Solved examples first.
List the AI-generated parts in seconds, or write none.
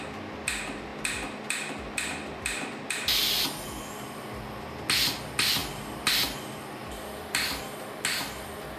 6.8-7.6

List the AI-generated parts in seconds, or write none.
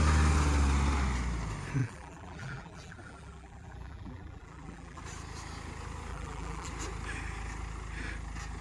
1.8-5.0; 6.1-6.7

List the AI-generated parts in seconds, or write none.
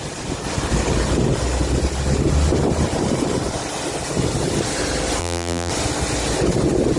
5.2-5.7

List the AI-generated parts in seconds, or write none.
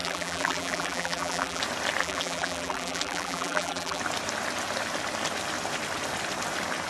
0.0-1.6; 2.0-4.0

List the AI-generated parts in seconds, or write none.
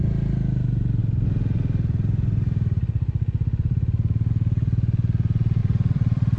5.6-6.4